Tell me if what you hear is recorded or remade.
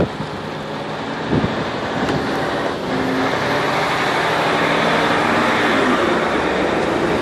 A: recorded